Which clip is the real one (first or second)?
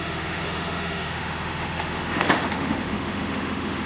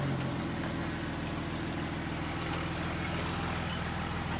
second